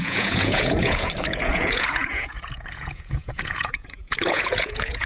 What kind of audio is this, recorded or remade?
remade